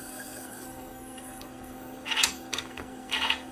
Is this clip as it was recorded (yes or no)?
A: no